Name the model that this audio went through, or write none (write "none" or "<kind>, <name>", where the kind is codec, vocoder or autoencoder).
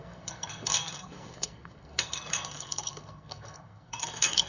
codec, SNAC